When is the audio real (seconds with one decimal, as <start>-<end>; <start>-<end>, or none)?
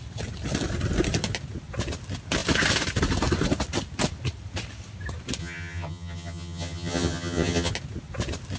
0.0-5.4; 7.7-8.6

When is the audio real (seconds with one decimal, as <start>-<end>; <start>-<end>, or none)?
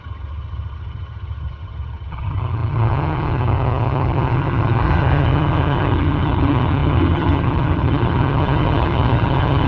none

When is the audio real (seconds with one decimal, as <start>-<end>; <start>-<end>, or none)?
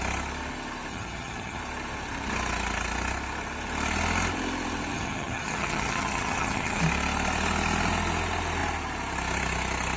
0.0-0.9; 1.6-4.9; 6.8-10.0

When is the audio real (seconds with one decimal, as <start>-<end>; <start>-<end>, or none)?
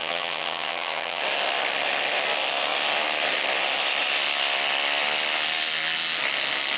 1.2-6.8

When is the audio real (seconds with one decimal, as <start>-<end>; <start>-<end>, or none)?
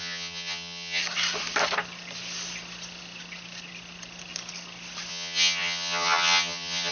1.0-5.1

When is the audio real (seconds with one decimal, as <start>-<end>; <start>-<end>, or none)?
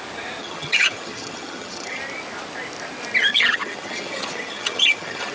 0.0-0.4; 2.0-3.3